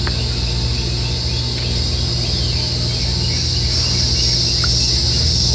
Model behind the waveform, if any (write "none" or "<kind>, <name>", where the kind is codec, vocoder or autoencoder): none